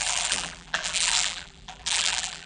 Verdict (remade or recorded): remade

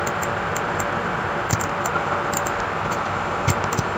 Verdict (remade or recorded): recorded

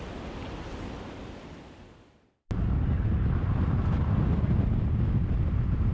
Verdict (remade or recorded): recorded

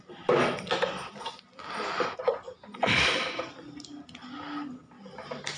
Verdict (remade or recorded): recorded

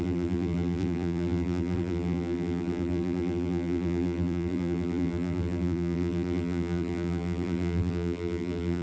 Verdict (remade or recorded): remade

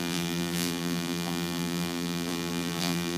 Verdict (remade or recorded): remade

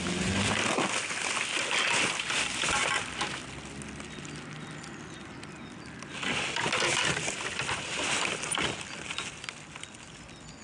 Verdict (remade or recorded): recorded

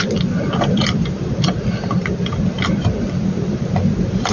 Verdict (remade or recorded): remade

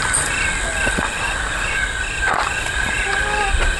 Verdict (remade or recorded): recorded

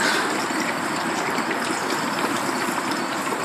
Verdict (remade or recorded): remade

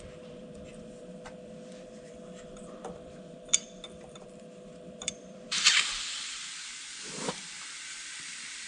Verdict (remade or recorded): remade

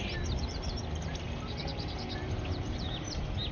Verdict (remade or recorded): remade